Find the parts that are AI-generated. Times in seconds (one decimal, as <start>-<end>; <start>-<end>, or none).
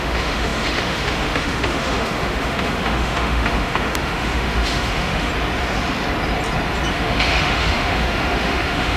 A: 0.0-5.3; 6.9-9.0